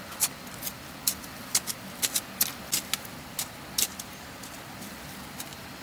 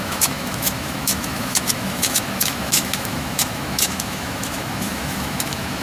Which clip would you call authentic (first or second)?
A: first